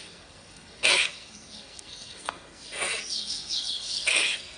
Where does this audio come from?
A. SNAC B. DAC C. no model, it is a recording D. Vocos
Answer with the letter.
A